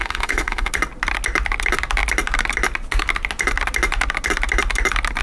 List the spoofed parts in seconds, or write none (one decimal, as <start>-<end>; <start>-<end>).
0.0-0.7